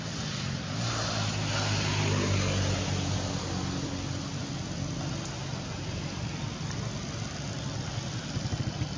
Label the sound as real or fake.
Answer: real